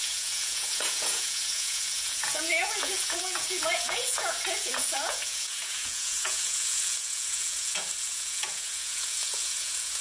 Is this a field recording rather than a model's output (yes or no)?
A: no